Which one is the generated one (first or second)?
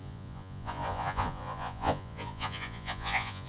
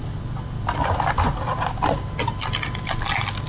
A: first